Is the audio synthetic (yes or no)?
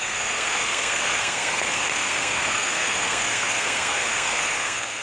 yes